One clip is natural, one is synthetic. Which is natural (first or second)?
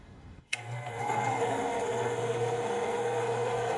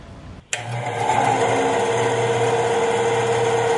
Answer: second